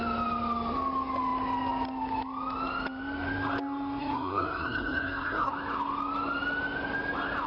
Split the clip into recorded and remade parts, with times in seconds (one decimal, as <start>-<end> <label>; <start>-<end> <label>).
0.0-4.0 recorded; 4.0-5.5 remade; 5.5-7.5 recorded